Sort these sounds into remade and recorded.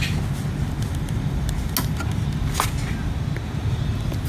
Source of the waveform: recorded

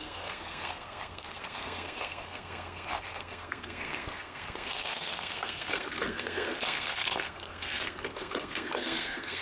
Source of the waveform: remade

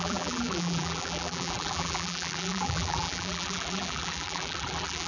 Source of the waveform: remade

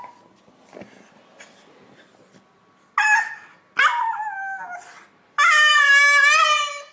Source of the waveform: recorded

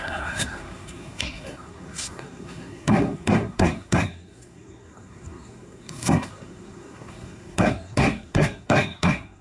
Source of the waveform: remade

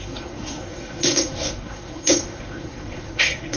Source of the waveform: remade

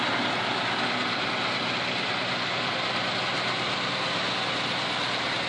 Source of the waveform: recorded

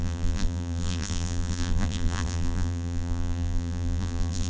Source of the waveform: remade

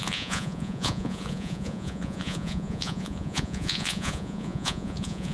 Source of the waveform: remade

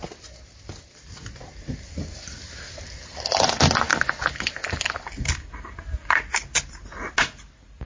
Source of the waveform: recorded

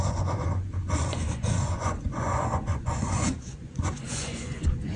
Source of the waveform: remade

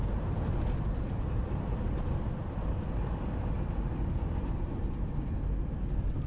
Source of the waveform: recorded